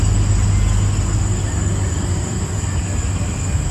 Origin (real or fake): real